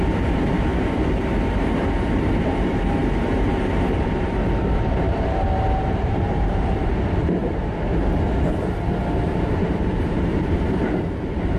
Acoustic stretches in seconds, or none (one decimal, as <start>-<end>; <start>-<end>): 0.7-2.2; 7.4-9.5